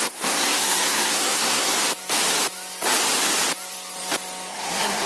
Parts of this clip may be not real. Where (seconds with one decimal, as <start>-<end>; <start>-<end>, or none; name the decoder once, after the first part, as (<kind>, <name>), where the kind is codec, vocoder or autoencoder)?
0.0-1.7 (codec, SNAC); 4.5-5.1